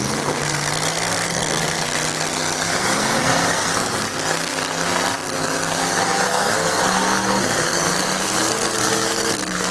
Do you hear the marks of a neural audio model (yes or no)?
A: yes